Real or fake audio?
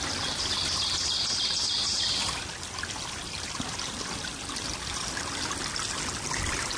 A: real